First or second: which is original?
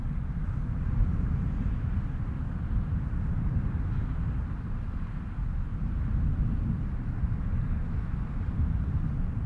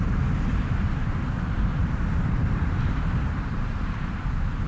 first